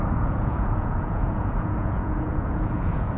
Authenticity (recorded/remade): remade